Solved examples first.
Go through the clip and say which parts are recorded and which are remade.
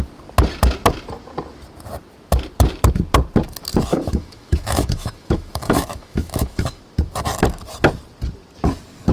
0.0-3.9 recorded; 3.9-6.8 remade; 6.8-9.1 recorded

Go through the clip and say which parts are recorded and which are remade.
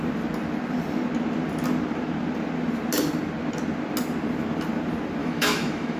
0.0-5.2 recorded; 5.2-6.0 remade